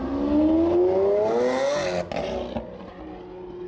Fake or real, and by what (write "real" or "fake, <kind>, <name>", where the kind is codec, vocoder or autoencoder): real